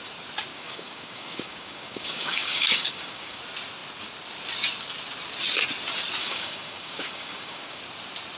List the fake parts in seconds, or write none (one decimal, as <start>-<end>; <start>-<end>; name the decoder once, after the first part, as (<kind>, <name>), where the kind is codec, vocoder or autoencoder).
0.5-3.4 (codec, DAC); 6.2-7.8